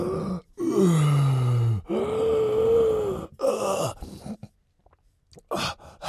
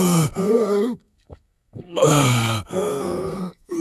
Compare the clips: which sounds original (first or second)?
first